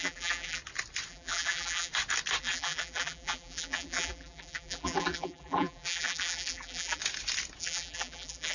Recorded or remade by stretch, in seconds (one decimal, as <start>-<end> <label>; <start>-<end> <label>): 0.0-0.6 remade; 0.6-1.1 recorded; 1.1-1.9 remade; 1.9-2.4 recorded; 2.4-7.0 remade; 7.0-7.6 recorded; 7.6-8.5 remade